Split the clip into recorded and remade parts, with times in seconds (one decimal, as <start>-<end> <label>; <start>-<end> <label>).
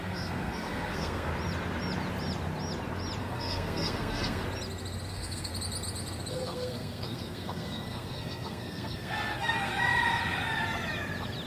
0.0-1.3 remade; 1.3-3.2 recorded; 3.2-4.4 remade; 4.4-5.1 recorded; 5.1-5.5 remade; 5.5-6.3 recorded; 6.3-9.7 remade; 9.7-11.5 recorded